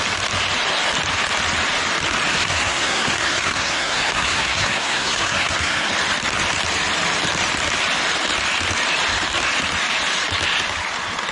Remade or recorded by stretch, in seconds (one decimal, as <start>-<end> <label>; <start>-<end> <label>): 0.0-2.3 recorded; 2.3-5.9 remade; 5.9-11.3 recorded